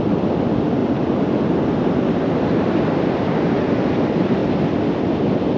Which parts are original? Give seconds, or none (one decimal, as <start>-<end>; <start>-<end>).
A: 4.4-5.6